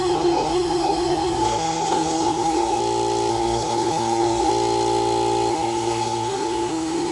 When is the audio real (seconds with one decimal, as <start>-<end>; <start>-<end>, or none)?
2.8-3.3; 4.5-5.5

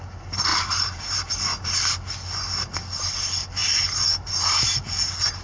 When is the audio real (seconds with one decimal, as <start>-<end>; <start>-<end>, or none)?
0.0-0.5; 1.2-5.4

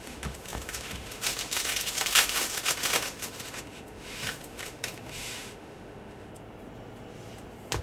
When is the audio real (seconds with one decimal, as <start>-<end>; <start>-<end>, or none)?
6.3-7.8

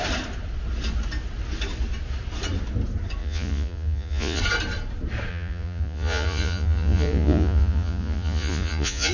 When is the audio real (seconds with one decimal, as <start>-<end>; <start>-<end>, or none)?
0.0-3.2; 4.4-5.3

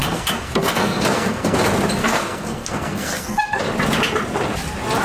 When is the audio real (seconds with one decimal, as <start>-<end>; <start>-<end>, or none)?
1.6-2.0; 3.6-5.0

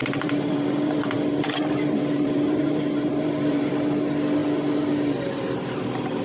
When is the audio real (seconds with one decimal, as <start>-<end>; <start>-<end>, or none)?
3.7-6.2

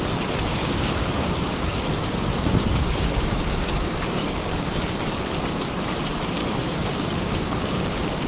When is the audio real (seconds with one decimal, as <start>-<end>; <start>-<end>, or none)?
0.0-0.6; 5.0-6.4

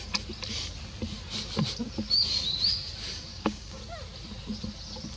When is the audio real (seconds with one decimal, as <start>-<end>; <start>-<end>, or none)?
0.0-3.3; 3.8-5.2